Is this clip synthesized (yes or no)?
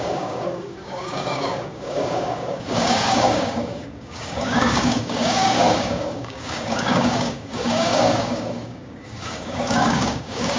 yes